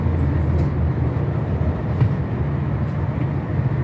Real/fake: real